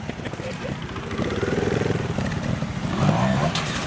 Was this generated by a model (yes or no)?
yes